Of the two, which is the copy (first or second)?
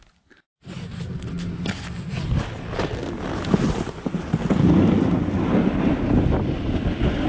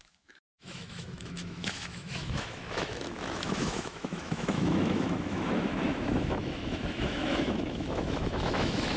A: second